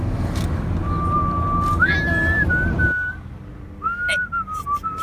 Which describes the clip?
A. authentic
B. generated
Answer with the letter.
A